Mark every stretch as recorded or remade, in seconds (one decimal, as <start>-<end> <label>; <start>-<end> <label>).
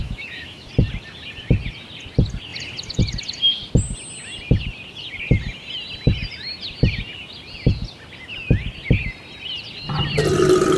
0.0-0.7 remade; 0.7-10.8 recorded